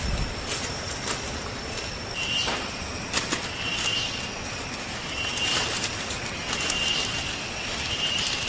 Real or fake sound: real